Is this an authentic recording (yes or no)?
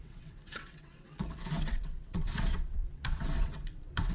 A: no